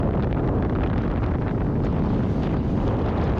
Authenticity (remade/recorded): recorded